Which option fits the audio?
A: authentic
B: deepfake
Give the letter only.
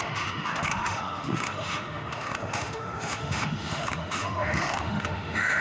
B